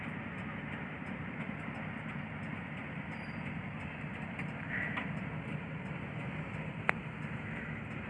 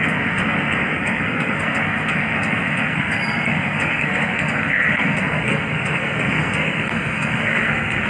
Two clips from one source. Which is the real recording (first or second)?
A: first